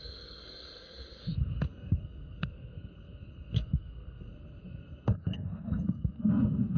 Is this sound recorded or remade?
remade